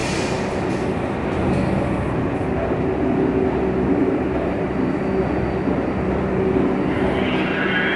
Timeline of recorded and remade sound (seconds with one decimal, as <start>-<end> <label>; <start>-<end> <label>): 0.0-8.0 recorded